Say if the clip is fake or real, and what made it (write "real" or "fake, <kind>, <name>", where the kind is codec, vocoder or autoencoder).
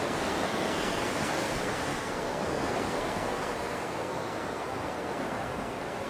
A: fake, codec, SNAC